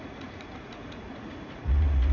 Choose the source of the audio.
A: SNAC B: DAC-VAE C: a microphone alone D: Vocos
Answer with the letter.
D